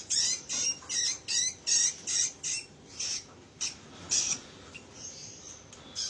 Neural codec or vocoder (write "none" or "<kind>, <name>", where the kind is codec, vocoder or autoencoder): none